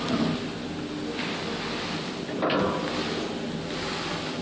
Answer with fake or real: real